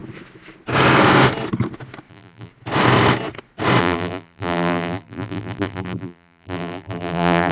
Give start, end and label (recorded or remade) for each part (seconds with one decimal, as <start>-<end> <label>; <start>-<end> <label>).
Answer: 0.0-2.1 recorded; 2.1-2.5 remade; 2.5-3.8 recorded; 3.8-7.5 remade